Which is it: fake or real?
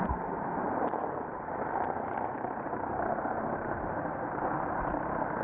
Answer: fake